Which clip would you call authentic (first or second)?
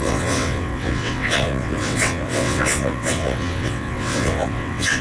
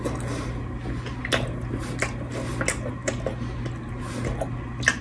second